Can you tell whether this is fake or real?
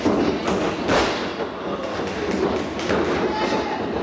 real